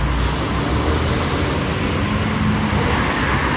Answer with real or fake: real